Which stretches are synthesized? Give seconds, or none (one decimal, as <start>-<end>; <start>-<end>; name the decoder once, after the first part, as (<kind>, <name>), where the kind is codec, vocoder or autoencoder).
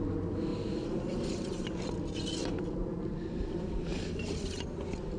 0.5-1.8 (vocoder, BigVGAN v2); 3.9-4.6